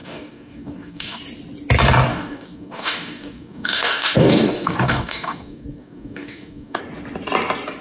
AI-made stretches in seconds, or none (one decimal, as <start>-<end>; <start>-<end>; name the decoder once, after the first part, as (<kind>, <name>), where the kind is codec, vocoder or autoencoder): 0.0-1.2 (codec, DAC); 2.1-6.8